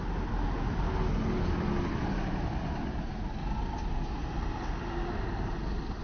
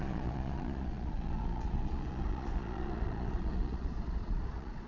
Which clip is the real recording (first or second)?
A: first